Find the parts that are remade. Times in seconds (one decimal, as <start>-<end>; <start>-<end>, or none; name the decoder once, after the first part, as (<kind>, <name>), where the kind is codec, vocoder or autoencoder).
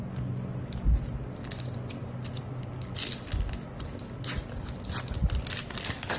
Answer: none